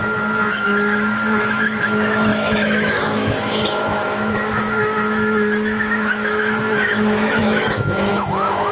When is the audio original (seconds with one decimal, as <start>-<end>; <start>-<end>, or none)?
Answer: none